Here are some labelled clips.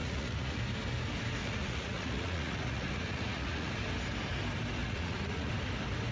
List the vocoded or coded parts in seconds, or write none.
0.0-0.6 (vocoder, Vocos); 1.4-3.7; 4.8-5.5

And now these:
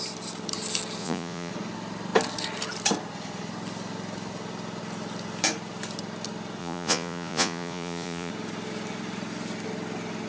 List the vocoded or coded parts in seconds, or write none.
1.0-1.5 (vocoder, Vocos); 6.6-8.3